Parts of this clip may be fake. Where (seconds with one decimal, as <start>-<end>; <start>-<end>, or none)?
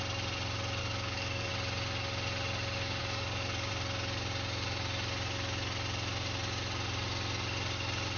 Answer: 0.8-1.5; 3.0-3.7